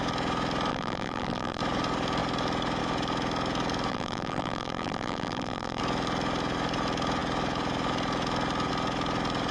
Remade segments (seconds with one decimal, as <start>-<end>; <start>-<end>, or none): 0.7-1.6; 3.9-5.8